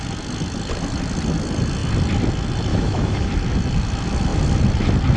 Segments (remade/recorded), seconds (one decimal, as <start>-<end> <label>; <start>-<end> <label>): 0.0-2.7 recorded; 2.7-3.3 remade; 3.3-5.2 recorded